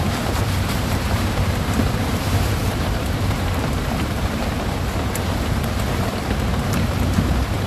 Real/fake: fake